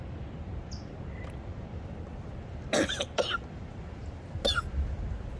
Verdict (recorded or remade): recorded